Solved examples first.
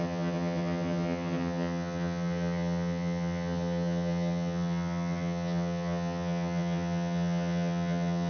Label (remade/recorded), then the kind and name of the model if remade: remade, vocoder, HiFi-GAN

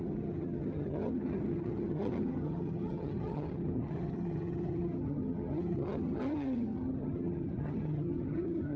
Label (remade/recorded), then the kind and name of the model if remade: remade, vocoder, HiFi-GAN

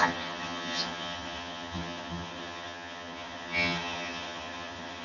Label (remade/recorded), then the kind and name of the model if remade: remade, vocoder, HiFi-GAN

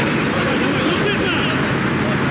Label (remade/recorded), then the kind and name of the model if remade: recorded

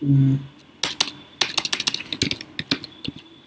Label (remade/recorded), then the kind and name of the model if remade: recorded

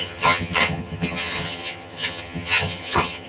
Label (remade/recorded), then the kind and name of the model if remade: remade, vocoder, HiFi-GAN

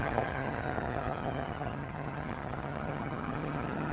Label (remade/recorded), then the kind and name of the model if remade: remade, vocoder, HiFi-GAN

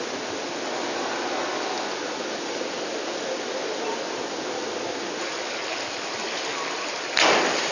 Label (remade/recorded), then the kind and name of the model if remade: recorded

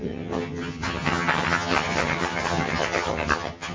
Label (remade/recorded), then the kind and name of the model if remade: remade, vocoder, HiFi-GAN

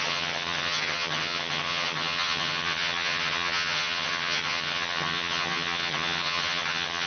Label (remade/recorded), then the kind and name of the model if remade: remade, vocoder, HiFi-GAN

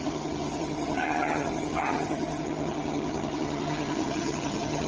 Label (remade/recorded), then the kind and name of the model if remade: remade, vocoder, HiFi-GAN